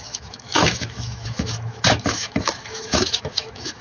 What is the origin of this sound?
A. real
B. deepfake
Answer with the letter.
B